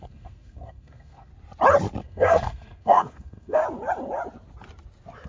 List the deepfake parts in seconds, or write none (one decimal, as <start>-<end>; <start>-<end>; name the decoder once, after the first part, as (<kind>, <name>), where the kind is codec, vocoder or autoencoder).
0.0-1.3 (codec, SNAC); 2.0-3.6